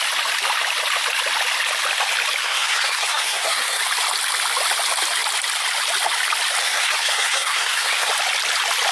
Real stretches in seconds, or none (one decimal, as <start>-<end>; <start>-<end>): 0.0-2.4; 3.8-6.6; 8.1-8.9